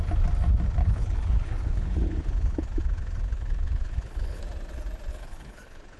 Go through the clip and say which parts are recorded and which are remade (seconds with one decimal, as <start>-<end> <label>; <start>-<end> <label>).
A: 0.0-0.8 recorded; 0.8-4.4 remade; 4.4-5.1 recorded; 5.1-6.0 remade